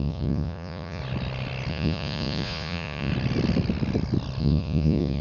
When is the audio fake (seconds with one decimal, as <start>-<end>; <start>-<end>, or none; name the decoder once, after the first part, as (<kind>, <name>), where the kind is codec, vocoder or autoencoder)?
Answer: 0.0-1.0 (vocoder, Vocos); 1.7-3.1; 4.4-5.2